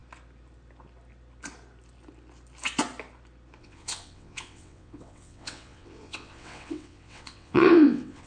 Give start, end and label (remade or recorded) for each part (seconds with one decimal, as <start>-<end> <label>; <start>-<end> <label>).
0.0-3.6 recorded; 3.6-8.3 remade